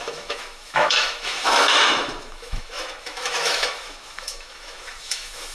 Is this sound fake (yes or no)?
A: yes